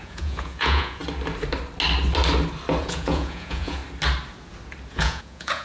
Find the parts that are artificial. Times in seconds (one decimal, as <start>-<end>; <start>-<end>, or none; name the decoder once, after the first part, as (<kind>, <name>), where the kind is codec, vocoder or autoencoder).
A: 0.0-1.0 (vocoder, Vocos); 2.8-3.8; 4.9-5.6